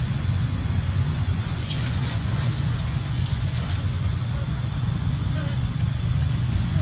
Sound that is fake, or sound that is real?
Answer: fake